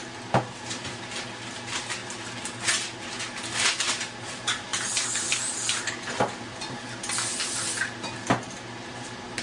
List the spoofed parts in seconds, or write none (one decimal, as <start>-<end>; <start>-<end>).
4.7-5.9